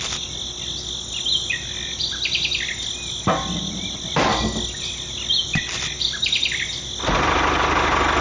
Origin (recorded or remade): recorded